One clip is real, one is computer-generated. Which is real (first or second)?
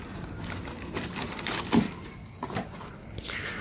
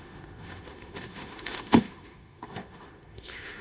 first